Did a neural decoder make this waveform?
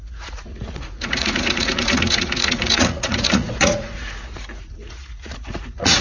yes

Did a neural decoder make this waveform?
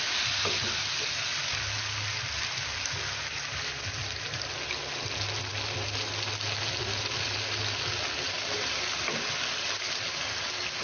no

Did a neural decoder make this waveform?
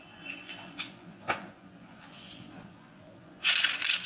yes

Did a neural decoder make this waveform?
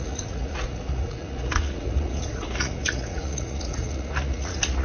yes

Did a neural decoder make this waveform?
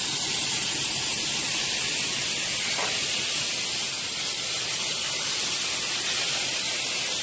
no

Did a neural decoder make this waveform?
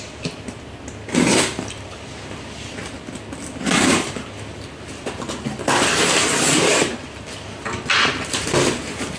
no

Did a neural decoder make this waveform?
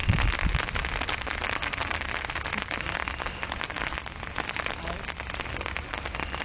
no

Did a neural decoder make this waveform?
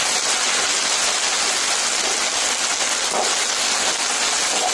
no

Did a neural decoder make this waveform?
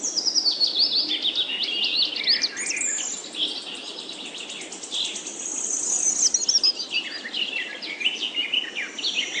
no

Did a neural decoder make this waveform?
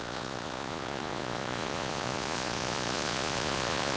yes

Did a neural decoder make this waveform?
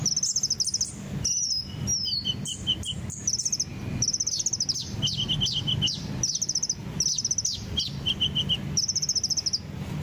no